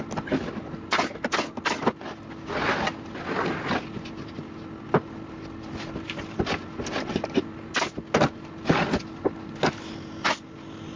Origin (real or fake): real